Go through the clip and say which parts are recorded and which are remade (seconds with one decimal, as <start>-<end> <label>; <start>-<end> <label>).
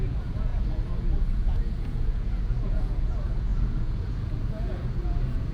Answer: 0.0-5.5 remade